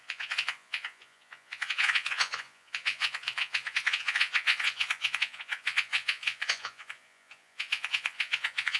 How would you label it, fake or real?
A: fake